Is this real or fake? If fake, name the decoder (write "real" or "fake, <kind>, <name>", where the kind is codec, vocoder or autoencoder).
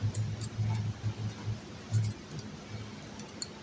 real